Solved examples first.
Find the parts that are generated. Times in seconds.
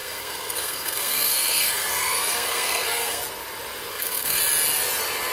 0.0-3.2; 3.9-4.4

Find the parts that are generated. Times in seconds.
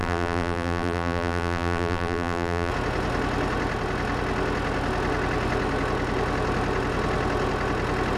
0.0-2.7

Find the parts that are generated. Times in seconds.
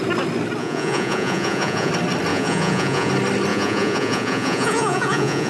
0.6-1.9; 2.3-3.1; 3.5-5.5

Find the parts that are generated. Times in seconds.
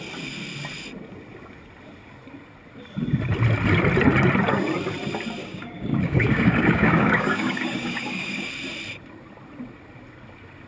5.4-8.5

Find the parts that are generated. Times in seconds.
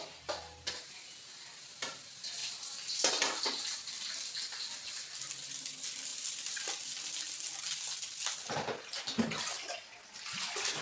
none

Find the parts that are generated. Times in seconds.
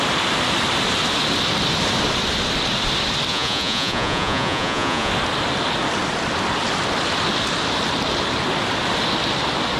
3.3-5.1